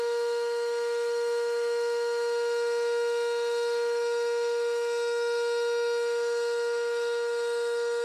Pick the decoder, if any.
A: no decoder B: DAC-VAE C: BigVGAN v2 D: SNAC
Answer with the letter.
B